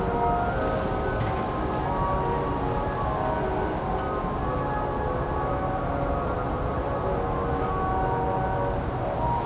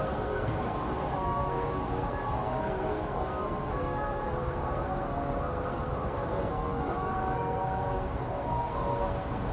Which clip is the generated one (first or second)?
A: second